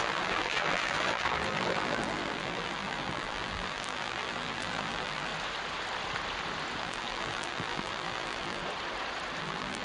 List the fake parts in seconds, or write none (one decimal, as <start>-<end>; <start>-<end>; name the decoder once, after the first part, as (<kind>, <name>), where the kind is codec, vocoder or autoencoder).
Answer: 0.0-5.3 (vocoder, BigVGAN v2); 6.8-8.6; 9.4-9.8